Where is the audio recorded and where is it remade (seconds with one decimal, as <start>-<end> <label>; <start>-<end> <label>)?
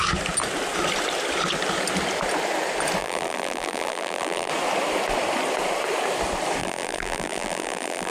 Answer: 0.0-3.0 recorded; 3.0-4.5 remade; 4.5-6.6 recorded; 6.6-8.1 remade